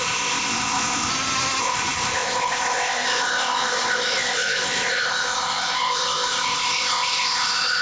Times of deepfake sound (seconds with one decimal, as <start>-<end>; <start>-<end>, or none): 0.0-1.1; 1.6-7.8